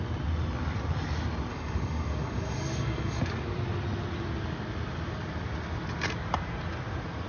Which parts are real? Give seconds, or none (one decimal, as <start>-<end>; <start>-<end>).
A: 0.0-1.5; 3.2-7.3